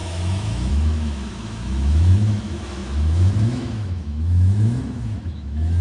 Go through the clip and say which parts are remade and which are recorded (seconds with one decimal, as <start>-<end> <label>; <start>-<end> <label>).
0.0-5.8 remade